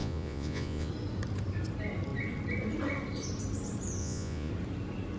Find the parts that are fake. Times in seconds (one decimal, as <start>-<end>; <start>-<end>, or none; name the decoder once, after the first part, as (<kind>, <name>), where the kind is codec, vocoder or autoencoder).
0.0-0.9 (vocoder, Vocos); 4.0-4.5